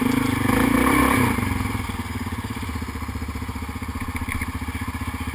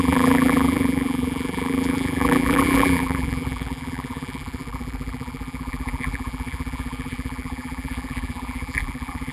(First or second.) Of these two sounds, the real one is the first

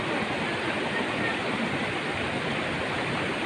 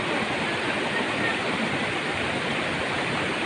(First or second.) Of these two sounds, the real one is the first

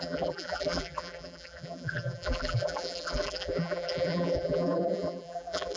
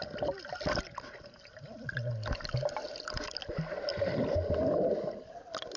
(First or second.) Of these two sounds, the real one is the second